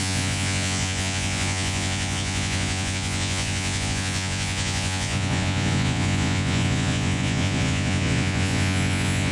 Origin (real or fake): fake